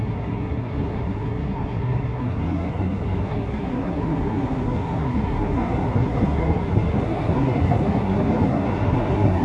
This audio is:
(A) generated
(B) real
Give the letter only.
A